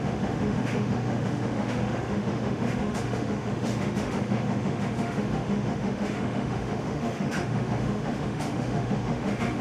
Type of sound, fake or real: fake